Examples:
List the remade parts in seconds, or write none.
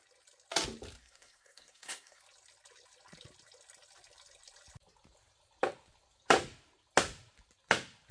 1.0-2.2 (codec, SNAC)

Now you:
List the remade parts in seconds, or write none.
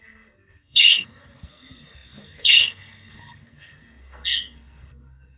0.0-5.4 (codec, SNAC)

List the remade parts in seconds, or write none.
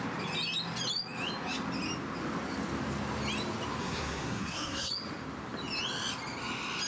3.8-4.9 (codec, SNAC)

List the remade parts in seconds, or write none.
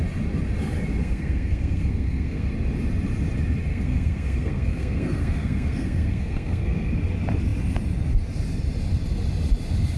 1.0-2.5 (codec, SNAC); 3.7-6.9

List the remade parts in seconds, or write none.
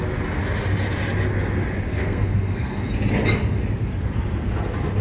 1.9-2.9 (codec, SNAC)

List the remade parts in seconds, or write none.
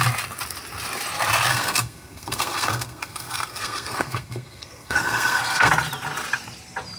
1.5-5.7 (codec, SNAC)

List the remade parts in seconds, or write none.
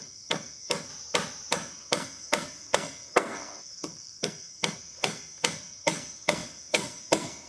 0.0-0.9 (codec, SNAC); 1.5-7.5